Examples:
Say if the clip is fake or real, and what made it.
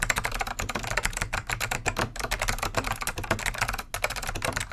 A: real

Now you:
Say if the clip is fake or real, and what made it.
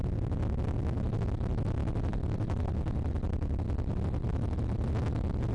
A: real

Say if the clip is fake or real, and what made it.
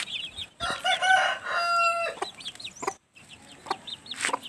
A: real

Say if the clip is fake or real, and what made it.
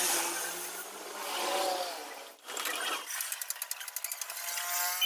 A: real